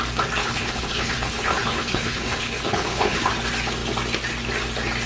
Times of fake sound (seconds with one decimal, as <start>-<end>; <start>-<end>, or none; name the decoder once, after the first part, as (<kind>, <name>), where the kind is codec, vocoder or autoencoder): 0.4-3.3 (codec, HILCodec)